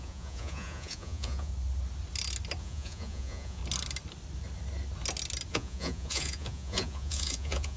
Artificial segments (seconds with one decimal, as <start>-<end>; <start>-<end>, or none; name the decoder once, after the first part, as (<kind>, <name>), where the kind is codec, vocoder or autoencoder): 0.0-1.5 (vocoder, Vocos); 2.6-3.6; 5.5-7.8